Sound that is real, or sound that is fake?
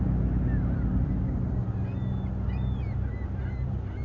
real